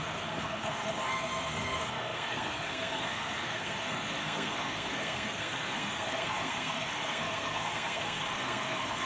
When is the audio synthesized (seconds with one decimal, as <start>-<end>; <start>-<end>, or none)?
0.0-9.1